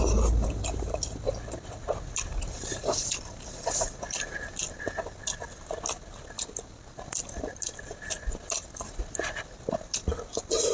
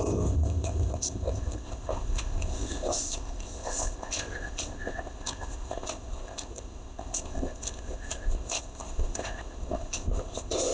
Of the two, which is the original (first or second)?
first